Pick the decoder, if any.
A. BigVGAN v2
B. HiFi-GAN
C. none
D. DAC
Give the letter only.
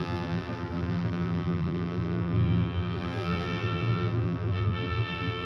A